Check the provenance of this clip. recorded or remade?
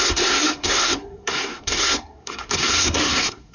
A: remade